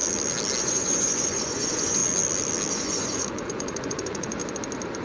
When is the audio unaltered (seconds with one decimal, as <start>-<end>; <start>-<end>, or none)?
0.0-0.6; 2.0-2.7; 4.4-5.0